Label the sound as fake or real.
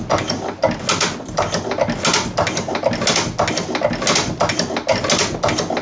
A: real